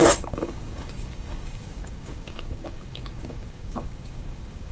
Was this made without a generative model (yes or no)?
no